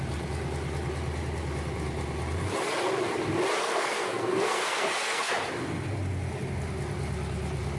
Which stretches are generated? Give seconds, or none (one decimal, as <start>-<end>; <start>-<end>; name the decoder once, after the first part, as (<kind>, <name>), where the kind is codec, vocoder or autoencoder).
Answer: 3.6-5.3 (codec, SNAC)